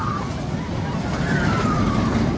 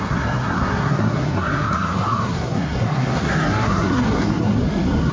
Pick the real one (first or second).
first